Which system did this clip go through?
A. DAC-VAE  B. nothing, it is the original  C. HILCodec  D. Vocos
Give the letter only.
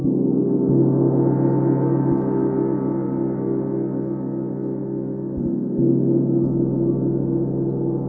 B